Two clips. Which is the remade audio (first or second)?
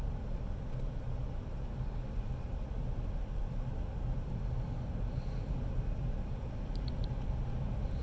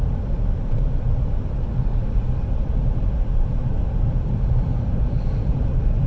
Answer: second